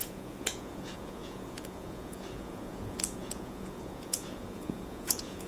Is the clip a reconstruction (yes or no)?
yes